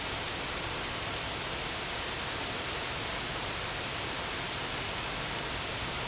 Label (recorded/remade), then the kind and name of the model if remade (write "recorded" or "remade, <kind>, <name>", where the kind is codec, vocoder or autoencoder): recorded